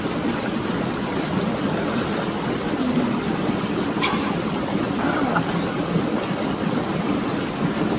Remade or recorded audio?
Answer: recorded